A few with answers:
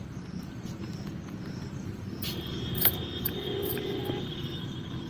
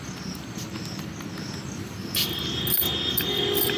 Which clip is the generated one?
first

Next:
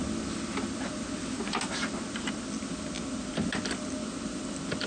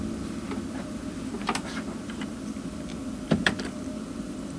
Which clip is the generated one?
second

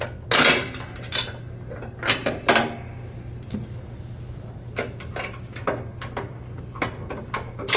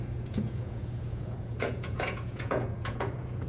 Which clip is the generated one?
second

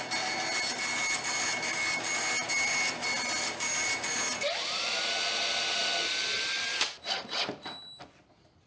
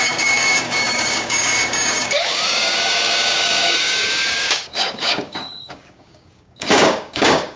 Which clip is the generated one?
second